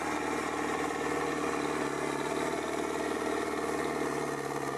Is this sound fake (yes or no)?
no